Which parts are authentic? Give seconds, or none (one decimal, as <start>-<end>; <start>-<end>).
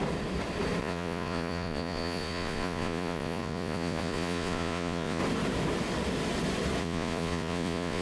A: 0.0-0.8; 5.2-6.8